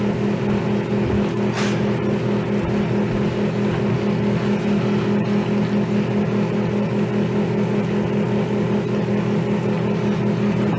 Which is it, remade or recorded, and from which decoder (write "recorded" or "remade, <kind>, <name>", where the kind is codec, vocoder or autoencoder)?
recorded